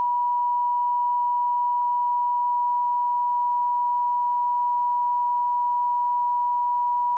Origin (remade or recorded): recorded